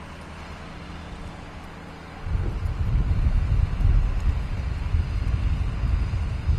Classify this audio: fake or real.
real